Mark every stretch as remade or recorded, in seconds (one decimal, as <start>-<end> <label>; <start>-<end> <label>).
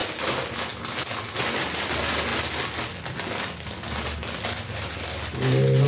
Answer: 0.0-5.9 recorded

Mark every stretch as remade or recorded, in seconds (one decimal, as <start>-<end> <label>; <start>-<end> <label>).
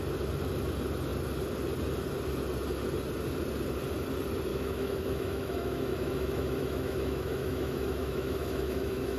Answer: 0.0-4.5 recorded; 4.5-9.2 remade